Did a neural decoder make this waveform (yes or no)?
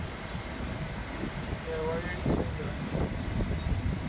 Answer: no